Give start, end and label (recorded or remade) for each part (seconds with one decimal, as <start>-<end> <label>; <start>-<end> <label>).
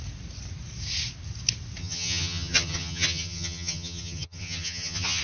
0.0-1.8 recorded; 1.8-5.2 remade